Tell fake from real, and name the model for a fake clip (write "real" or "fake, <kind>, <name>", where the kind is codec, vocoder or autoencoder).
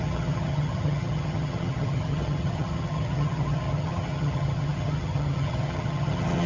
fake, vocoder, HiFi-GAN